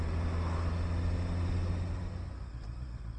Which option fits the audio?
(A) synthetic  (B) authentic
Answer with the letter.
B